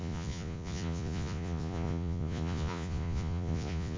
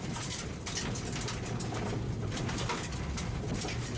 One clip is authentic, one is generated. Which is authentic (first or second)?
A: second